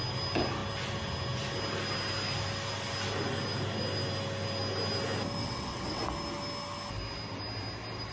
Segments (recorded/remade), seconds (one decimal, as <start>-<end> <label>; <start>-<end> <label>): 0.0-5.4 recorded; 5.4-6.0 remade; 6.0-8.1 recorded